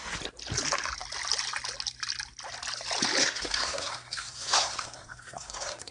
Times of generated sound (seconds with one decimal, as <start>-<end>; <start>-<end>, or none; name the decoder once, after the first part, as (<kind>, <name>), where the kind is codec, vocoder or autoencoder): 3.2-5.9 (codec, SNAC)